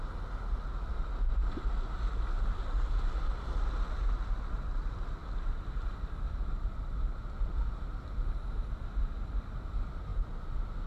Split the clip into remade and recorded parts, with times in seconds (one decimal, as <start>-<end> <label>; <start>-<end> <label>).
0.0-10.9 recorded